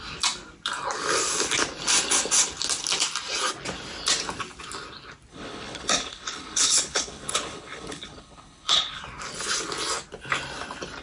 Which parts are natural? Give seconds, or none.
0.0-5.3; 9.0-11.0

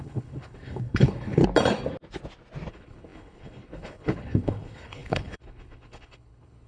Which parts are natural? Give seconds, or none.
1.4-2.7

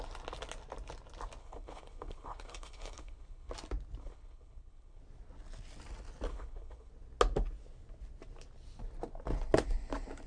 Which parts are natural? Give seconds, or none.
0.0-1.4; 3.5-4.0; 5.0-6.3; 6.9-10.3

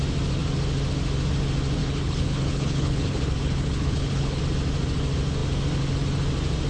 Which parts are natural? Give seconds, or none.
0.0-1.8; 4.4-6.7